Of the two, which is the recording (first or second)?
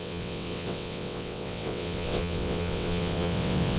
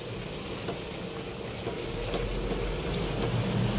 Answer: second